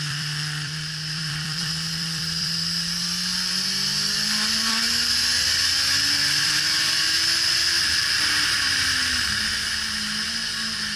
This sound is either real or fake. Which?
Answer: fake